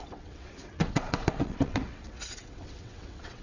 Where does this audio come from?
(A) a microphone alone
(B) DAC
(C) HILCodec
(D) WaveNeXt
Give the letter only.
D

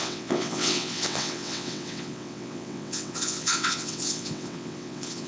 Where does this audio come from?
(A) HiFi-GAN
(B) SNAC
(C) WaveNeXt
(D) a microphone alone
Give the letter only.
C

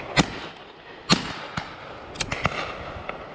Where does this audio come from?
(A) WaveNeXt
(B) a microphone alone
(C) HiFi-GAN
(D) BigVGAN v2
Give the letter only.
B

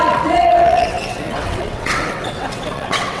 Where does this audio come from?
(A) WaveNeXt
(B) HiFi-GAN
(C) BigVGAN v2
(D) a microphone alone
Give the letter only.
A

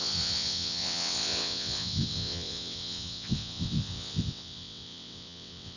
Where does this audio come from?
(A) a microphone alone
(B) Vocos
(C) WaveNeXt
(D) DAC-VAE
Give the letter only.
C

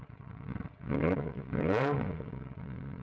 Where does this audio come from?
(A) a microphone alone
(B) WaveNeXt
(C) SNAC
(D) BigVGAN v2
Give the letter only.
B